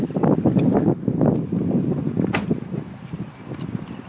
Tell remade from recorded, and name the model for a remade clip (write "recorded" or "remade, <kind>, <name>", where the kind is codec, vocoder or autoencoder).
remade, vocoder, BigVGAN v2